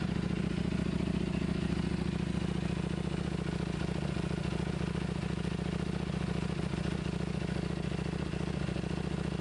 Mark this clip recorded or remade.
recorded